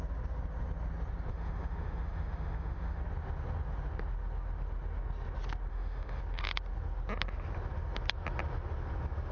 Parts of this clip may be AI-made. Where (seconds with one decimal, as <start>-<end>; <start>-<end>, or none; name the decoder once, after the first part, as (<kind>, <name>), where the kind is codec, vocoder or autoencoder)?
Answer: 1.3-3.0 (autoencoder, DAC-VAE); 5.7-6.2